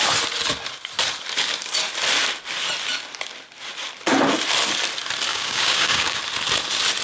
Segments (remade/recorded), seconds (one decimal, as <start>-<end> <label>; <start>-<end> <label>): 0.0-5.3 recorded; 5.3-6.2 remade; 6.2-7.0 recorded

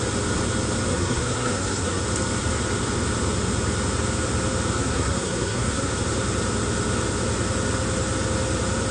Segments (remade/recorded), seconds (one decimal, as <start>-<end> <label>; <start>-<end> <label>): 0.0-0.9 recorded; 0.9-2.0 remade; 2.0-4.8 recorded; 4.8-5.9 remade; 5.9-8.9 recorded

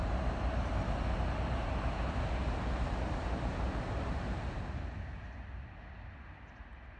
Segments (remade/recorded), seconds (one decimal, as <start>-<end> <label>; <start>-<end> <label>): 0.0-7.0 recorded